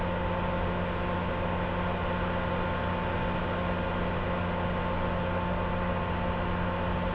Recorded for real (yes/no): yes